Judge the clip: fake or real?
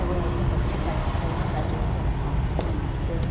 real